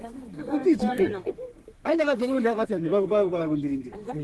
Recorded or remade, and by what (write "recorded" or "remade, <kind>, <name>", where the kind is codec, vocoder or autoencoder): remade, codec, SNAC